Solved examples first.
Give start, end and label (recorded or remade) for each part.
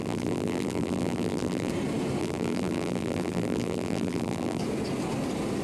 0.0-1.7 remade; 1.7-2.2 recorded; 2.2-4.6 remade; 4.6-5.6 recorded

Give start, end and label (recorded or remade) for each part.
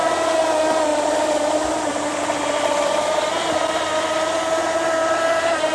0.0-0.9 recorded; 0.9-4.3 remade; 4.3-5.7 recorded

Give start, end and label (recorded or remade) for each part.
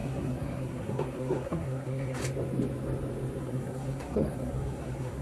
0.0-2.2 remade; 2.2-3.4 recorded; 3.4-5.2 remade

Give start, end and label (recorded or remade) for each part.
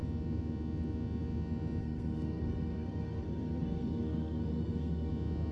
0.0-1.8 recorded; 1.8-5.1 remade; 5.1-5.5 recorded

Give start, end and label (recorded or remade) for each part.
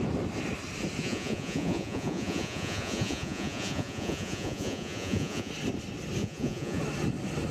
0.0-1.0 recorded; 1.0-5.5 remade; 5.5-6.2 recorded; 6.2-6.8 remade; 6.8-7.5 recorded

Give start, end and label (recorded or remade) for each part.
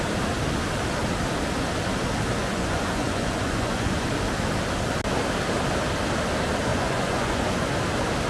0.0-2.4 recorded; 2.4-4.1 remade; 4.1-6.7 recorded; 6.7-7.7 remade; 7.7-8.3 recorded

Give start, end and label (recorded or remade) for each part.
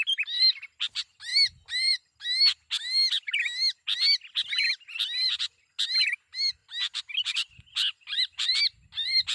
0.0-9.3 recorded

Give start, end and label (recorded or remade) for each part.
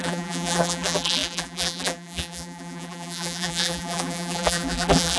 0.0-5.2 remade